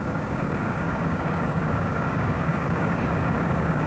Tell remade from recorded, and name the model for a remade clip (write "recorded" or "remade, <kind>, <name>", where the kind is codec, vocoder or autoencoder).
remade, codec, DAC